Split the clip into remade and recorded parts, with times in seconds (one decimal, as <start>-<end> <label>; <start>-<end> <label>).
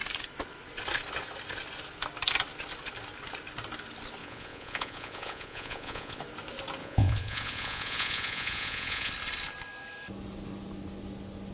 0.0-4.2 recorded; 4.2-6.2 remade; 6.2-6.8 recorded; 6.8-9.1 remade; 9.1-11.5 recorded